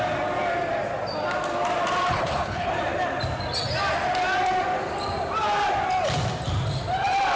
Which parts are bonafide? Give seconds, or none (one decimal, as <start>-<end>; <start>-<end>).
0.0-2.1; 2.7-7.4